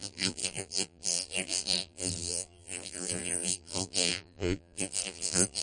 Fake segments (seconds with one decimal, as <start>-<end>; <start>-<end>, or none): 0.0-5.6